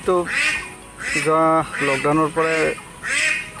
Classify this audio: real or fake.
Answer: real